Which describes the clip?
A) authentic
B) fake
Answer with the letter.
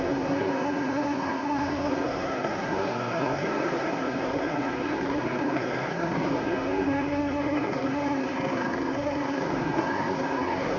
B